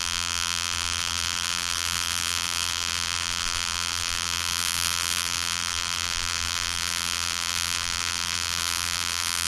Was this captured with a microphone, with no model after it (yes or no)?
no